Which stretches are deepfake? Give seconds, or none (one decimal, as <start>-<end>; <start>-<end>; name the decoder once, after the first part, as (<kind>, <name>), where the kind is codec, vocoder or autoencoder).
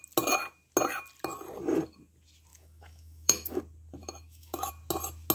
2.5-3.6 (autoencoder, DAC-VAE); 4.0-4.7